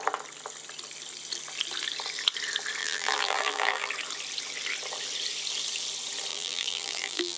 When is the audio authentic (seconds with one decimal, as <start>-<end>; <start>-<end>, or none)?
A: 0.0-2.8; 3.9-6.3